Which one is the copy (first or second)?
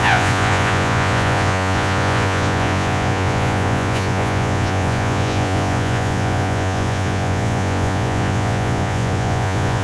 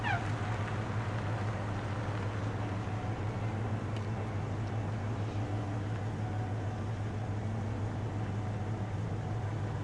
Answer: first